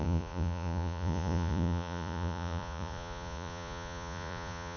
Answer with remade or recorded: remade